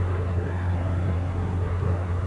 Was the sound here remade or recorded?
remade